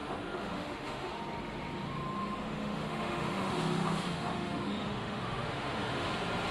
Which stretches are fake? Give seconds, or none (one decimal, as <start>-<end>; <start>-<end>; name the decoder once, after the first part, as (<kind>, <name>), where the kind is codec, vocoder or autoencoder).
0.0-1.2 (autoencoder, DAC-VAE); 2.2-6.1